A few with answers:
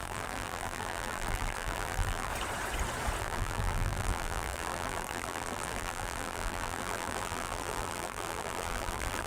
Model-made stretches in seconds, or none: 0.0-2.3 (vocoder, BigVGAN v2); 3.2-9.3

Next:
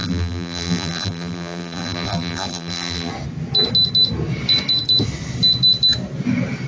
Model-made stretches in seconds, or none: 0.0-3.1 (vocoder, BigVGAN v2)

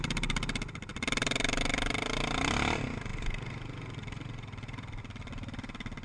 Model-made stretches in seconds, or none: none

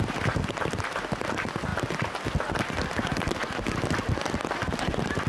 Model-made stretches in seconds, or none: none

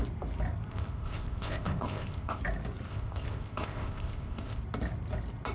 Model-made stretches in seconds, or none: 0.7-2.4 (codec, ZipCodec); 2.9-4.6

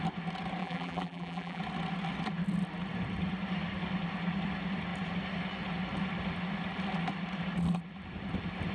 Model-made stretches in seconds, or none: 0.6-1.6 (vocoder, BigVGAN v2)

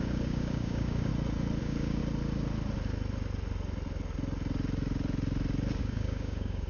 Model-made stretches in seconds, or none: 0.0-1.1 (codec, DAC); 1.6-2.0; 5.8-6.7

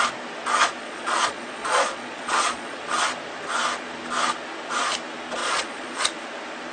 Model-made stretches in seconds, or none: 0.8-2.8 (vocoder, Vocos); 5.4-6.0